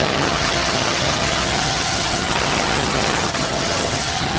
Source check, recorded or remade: remade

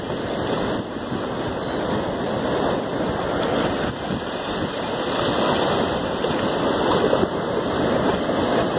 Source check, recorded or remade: recorded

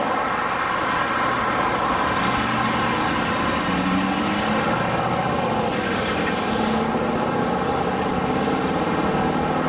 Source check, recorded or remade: recorded